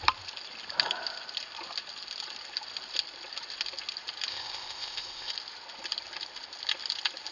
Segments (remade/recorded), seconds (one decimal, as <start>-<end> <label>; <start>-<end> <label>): 0.0-4.3 recorded; 4.3-5.3 remade; 5.3-7.3 recorded